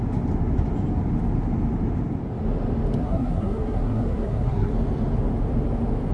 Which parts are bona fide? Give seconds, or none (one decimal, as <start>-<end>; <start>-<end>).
0.0-3.0; 4.7-6.1

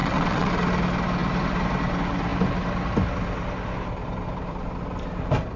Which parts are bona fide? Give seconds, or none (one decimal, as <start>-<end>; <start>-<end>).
0.5-5.6

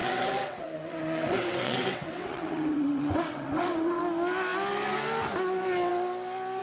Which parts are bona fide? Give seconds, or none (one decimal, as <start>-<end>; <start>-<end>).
4.0-6.6

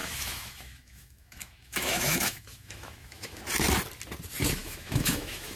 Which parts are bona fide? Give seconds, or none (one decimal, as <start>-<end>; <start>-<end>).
3.4-4.6